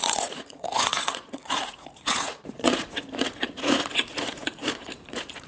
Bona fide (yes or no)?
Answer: no